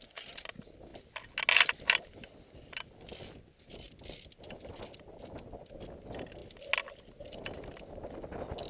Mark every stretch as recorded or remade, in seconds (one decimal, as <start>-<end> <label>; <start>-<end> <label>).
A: 0.0-8.7 recorded